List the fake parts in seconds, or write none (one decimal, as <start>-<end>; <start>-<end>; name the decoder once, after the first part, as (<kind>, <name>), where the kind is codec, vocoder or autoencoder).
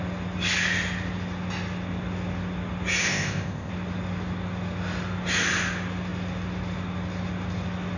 3.0-3.7 (codec, ZipCodec)